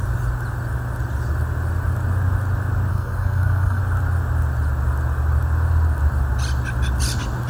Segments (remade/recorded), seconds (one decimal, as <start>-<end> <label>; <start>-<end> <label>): 0.0-2.9 recorded; 2.9-3.8 remade; 3.8-7.5 recorded